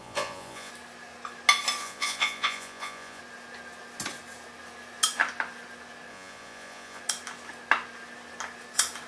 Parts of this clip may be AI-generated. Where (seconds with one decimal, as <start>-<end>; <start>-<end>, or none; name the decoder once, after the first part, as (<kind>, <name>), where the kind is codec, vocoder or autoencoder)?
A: 0.0-0.7 (vocoder, Vocos); 1.8-3.2; 6.1-7.0